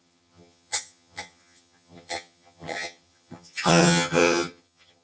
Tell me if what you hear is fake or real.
fake